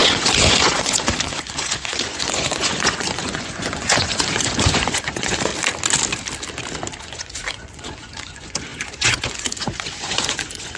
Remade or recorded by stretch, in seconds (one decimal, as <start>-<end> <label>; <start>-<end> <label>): 0.0-5.5 remade; 5.5-7.0 recorded; 7.0-10.8 remade